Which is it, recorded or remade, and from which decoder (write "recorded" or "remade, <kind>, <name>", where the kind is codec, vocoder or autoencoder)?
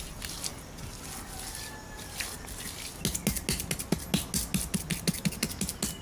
recorded